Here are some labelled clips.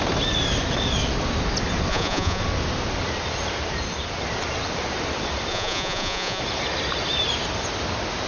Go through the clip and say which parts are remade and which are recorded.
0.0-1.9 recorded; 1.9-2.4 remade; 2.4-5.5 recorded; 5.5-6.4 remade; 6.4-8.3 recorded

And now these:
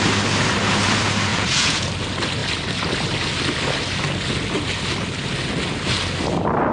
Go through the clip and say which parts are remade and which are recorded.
0.0-1.3 recorded; 1.3-1.9 remade; 1.9-6.7 recorded

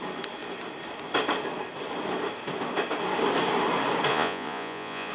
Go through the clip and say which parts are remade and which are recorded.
0.0-4.1 recorded; 4.1-5.1 remade

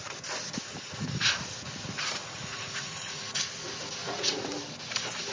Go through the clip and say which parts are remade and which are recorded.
0.0-2.2 recorded; 2.2-3.4 remade; 3.4-4.0 recorded; 4.0-4.5 remade; 4.5-5.3 recorded

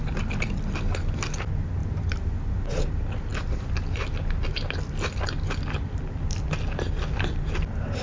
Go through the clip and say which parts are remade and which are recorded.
0.0-8.0 recorded

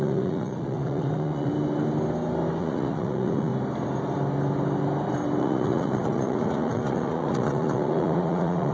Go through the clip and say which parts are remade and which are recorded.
0.0-1.5 remade; 1.5-2.6 recorded; 2.6-3.5 remade; 3.5-5.4 recorded; 5.4-8.7 remade